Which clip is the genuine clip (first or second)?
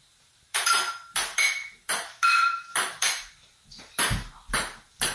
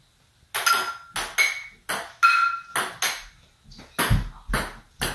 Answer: second